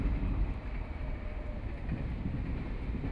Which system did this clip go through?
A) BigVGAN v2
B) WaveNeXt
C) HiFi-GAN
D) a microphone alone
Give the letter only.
D